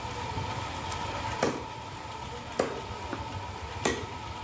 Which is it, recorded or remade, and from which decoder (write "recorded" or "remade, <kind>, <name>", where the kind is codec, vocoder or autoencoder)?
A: recorded